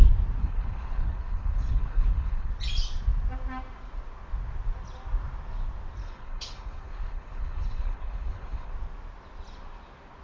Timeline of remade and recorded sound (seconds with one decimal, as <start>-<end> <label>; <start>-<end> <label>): 0.0-0.4 recorded; 0.4-2.5 remade; 2.5-6.0 recorded; 6.0-8.7 remade; 8.7-10.2 recorded